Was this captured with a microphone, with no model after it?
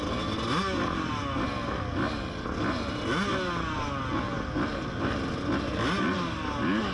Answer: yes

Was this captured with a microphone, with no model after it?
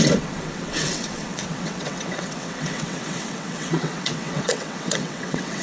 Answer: no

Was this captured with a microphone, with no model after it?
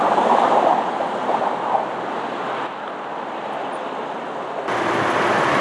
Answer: yes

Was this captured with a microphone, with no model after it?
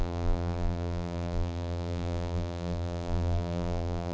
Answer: no